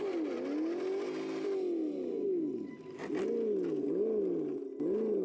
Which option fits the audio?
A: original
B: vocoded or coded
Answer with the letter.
A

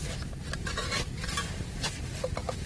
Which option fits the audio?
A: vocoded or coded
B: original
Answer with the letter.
B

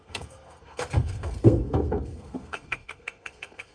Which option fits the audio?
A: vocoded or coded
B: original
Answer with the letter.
A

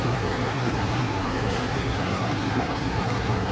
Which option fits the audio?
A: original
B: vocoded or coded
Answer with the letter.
B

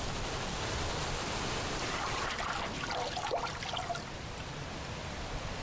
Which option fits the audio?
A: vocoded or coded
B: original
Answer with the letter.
A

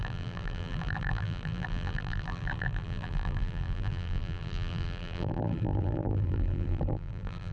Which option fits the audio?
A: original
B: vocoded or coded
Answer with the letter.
B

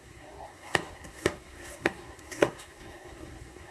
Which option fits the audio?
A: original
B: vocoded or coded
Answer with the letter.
B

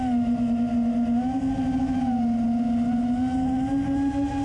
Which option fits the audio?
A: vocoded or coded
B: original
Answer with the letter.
B